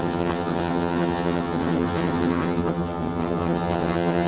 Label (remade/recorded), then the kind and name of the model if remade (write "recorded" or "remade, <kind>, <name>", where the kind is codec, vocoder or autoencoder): remade, vocoder, HiFi-GAN